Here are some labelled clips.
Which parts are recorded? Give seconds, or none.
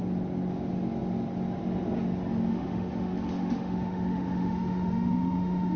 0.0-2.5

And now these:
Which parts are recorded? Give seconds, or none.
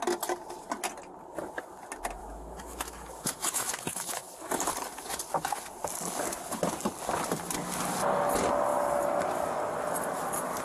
0.0-2.2; 4.3-10.6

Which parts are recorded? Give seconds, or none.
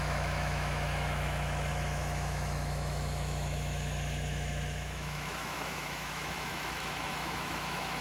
none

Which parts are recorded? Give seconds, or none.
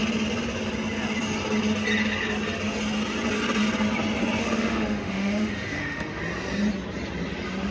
0.0-4.4; 6.2-7.7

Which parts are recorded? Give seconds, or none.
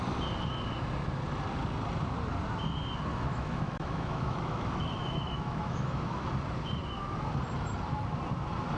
0.0-3.1; 6.3-8.8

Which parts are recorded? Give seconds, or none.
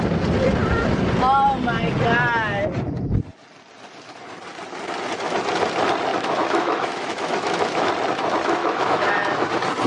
0.0-6.1; 7.9-8.6; 9.5-9.9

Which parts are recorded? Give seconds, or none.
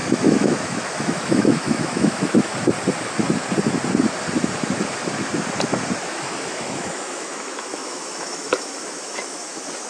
2.5-6.0